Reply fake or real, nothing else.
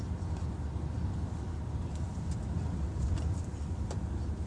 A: real